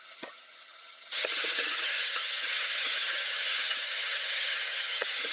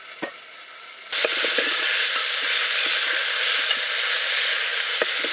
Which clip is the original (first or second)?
second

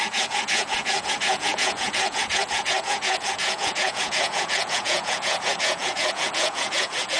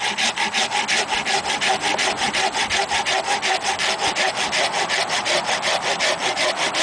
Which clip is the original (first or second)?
second